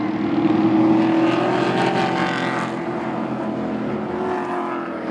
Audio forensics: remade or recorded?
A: recorded